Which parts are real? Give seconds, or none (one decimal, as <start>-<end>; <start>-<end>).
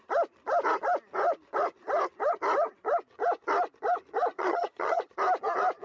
0.0-4.3; 5.1-5.8